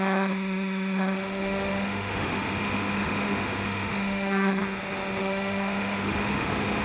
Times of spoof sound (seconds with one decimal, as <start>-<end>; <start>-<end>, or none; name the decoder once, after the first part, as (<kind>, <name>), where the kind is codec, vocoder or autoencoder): 0.0-4.6 (autoencoder, DAC-VAE); 5.2-6.8

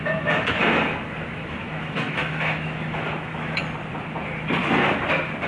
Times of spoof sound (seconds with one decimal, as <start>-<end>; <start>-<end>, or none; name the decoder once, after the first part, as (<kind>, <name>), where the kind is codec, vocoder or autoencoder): 0.0-0.6 (autoencoder, DAC-VAE); 1.3-3.6

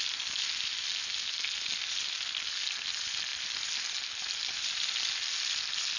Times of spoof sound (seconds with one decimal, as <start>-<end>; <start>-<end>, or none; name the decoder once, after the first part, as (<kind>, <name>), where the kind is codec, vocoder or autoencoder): none

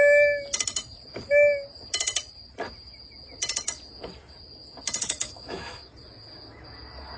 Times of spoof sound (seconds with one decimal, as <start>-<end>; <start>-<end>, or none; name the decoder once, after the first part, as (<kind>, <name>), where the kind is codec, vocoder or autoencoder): 5.0-5.9 (autoencoder, DAC-VAE)

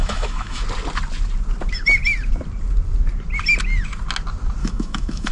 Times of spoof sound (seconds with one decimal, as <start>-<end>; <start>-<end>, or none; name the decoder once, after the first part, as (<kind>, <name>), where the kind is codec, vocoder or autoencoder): 0.0-0.6 (autoencoder, DAC-VAE); 4.6-5.3